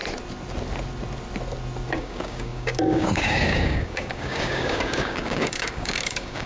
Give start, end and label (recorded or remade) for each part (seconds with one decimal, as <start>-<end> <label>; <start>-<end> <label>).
0.0-1.9 recorded; 1.9-6.5 remade